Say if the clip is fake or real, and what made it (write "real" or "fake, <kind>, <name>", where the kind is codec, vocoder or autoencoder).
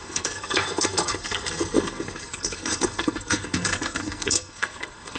fake, codec, SNAC